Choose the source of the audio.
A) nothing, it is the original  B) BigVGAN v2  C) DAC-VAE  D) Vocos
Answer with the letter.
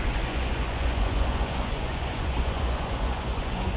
D